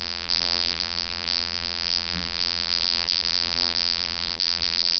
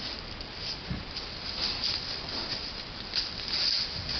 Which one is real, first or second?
second